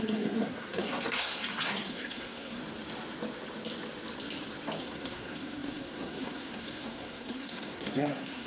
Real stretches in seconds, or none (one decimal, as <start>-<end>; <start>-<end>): 2.6-4.8